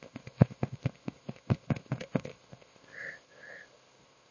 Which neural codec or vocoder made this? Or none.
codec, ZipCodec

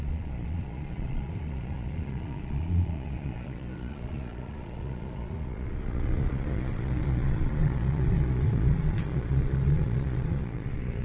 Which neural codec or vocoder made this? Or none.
vocoder, Vocos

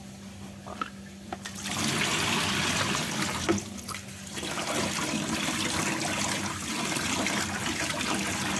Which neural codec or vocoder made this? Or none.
none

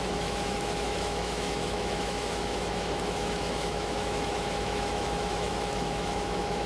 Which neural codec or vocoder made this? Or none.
autoencoder, DAC-VAE